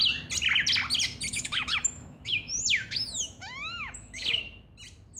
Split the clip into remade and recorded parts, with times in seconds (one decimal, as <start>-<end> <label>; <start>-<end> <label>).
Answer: 0.0-1.3 recorded; 1.3-4.4 remade; 4.4-5.2 recorded